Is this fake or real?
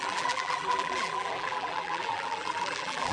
fake